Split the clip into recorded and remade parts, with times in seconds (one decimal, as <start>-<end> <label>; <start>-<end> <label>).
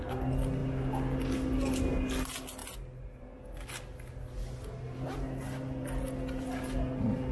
0.0-7.3 recorded